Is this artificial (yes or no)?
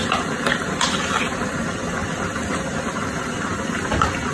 no